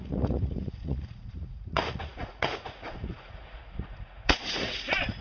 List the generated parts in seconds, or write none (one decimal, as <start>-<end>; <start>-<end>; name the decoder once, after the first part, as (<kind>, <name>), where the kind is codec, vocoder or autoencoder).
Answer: 0.0-5.2 (vocoder, Vocos)